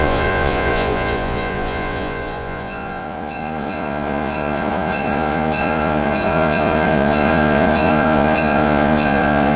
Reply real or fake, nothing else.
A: fake